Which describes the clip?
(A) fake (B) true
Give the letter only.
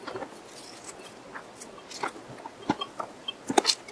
B